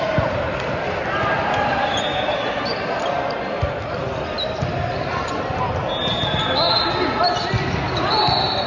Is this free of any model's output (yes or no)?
yes